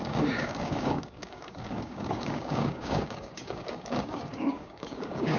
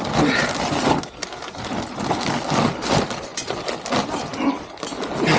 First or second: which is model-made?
first